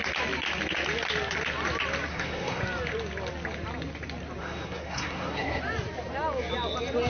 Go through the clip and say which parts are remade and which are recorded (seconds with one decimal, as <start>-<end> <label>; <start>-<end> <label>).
0.0-2.1 recorded; 2.1-2.6 remade; 2.6-4.4 recorded; 4.4-5.6 remade; 5.6-7.1 recorded